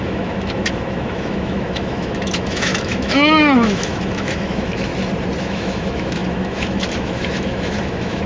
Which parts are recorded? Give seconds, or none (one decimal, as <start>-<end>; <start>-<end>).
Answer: 4.9-5.4